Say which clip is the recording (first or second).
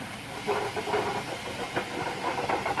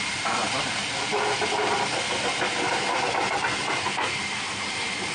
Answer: second